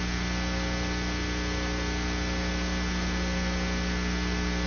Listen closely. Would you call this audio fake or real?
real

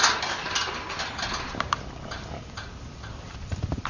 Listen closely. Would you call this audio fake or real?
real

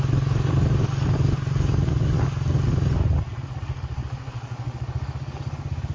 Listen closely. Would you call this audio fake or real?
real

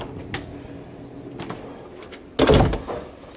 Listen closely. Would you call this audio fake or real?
real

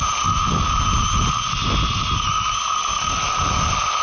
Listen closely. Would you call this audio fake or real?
real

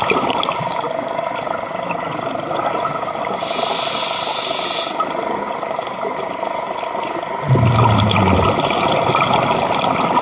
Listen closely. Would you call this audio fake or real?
real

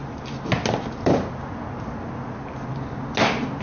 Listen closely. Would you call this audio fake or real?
real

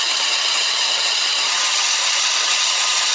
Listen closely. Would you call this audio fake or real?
fake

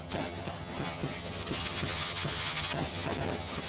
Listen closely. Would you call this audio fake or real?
fake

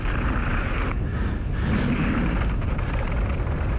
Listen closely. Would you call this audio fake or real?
real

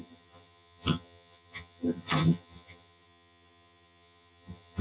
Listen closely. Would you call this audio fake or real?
fake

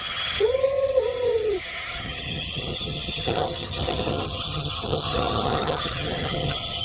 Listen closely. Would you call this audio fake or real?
fake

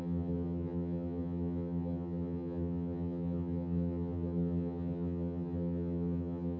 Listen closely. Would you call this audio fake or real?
fake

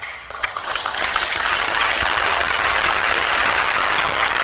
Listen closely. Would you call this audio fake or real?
fake